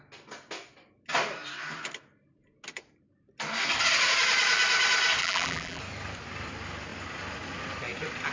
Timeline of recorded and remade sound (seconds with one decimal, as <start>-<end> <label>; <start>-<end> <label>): 0.0-5.2 recorded; 5.2-5.8 remade; 5.8-8.3 recorded